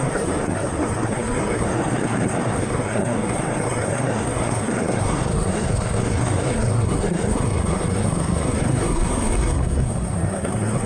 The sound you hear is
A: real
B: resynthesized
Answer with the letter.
B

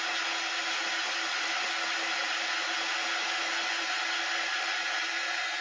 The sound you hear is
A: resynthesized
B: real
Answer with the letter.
B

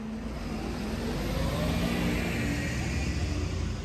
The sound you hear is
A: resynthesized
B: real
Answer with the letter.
B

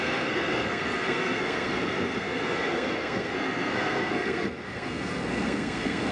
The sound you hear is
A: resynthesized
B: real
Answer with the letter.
A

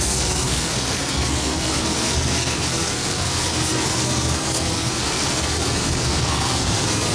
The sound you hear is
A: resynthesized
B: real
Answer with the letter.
A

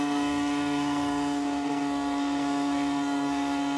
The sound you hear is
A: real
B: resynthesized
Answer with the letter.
B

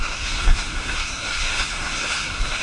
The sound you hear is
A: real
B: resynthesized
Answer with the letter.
B